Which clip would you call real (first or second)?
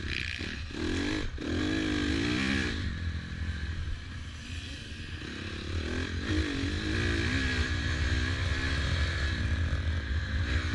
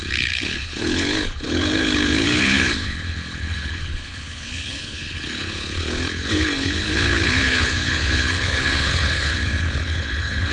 first